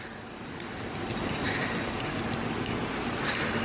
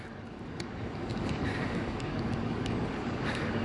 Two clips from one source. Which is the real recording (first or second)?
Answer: first